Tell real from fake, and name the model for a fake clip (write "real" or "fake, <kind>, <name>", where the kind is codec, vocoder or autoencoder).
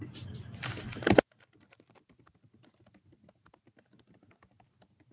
real